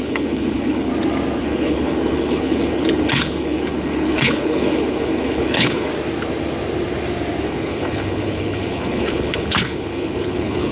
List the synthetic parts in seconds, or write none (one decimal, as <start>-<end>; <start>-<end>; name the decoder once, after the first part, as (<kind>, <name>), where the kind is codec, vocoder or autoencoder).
0.0-0.9 (codec, HILCodec); 1.4-5.9; 7.4-10.7